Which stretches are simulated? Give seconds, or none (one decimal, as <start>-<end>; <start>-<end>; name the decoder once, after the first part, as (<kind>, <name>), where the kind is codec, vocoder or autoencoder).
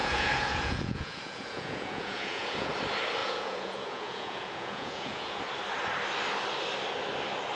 0.0-2.7 (vocoder, Vocos); 3.2-5.4